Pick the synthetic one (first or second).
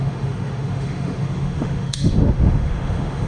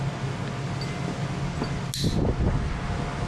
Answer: first